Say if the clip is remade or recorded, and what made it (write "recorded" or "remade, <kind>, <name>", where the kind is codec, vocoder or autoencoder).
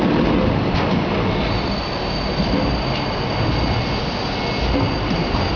recorded